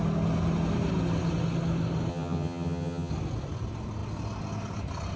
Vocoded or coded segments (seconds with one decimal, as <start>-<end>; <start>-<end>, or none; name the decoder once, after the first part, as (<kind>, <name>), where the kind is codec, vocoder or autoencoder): 2.1-3.1 (vocoder, HiFi-GAN)